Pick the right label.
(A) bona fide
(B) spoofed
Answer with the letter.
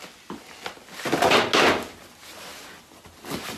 A